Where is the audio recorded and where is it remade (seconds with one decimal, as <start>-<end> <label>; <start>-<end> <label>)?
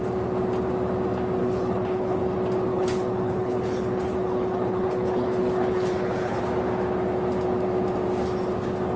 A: 0.0-1.4 recorded; 1.4-2.2 remade; 2.2-2.7 recorded; 2.7-6.4 remade; 6.4-9.0 recorded